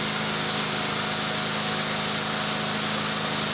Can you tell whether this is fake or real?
real